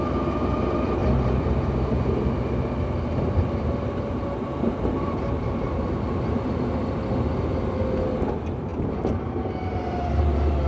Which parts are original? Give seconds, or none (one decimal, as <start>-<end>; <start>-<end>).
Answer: 0.0-1.0; 5.5-8.7; 10.2-10.7

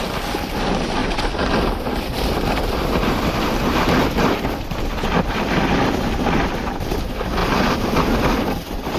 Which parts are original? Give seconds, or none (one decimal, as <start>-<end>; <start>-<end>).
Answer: 0.0-1.0; 2.7-4.0; 6.9-7.4

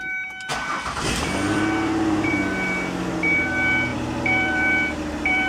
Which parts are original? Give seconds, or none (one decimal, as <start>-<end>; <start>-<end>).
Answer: 0.0-0.5; 2.3-3.9

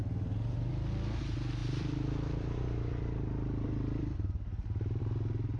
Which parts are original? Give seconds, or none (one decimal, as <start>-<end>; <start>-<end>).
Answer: 0.7-1.6; 5.0-5.6

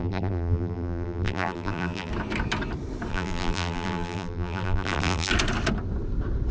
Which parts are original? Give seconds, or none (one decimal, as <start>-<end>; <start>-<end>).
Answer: 2.1-3.1; 5.3-6.5

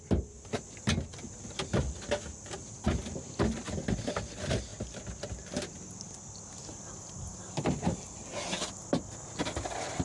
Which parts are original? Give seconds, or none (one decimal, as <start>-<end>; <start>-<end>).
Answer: 0.0-10.0